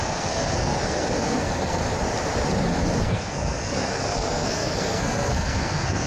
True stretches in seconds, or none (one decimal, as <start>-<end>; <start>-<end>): 1.8-3.0